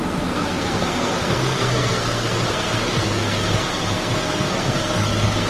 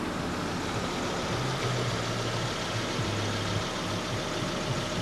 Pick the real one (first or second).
second